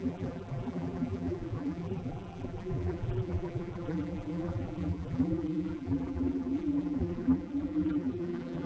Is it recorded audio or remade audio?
remade